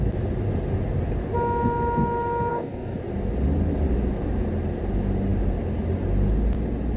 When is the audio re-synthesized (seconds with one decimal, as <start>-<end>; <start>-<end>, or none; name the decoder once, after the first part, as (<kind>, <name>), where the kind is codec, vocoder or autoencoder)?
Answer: 2.5-3.0 (codec, DAC)